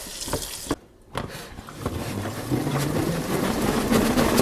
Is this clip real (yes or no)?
yes